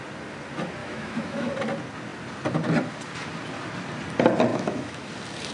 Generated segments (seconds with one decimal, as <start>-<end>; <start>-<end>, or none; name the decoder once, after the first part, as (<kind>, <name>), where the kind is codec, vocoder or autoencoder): 0.8-1.5 (autoencoder, DAC-VAE); 4.5-5.1